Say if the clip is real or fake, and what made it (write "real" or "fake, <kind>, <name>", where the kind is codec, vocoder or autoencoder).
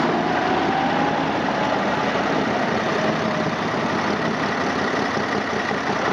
real